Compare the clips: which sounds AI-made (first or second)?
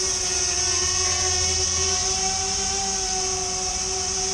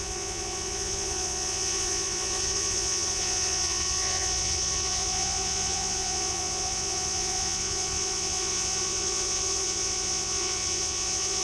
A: second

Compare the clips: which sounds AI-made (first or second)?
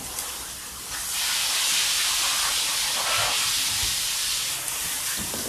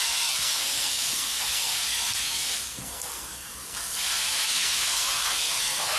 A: second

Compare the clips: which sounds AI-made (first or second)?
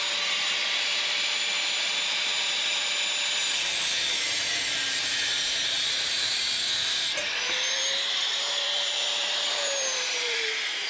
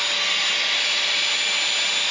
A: first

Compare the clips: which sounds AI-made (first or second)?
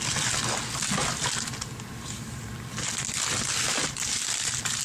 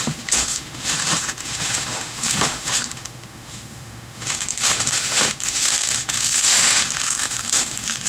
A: second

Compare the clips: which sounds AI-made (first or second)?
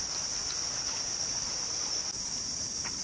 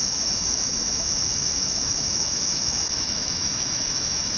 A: second